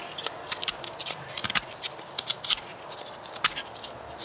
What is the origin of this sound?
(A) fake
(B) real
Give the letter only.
B